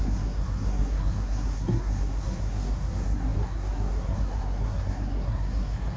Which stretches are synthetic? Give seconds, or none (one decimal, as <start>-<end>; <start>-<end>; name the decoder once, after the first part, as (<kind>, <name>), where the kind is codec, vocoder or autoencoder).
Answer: 0.0-6.0 (codec, SNAC)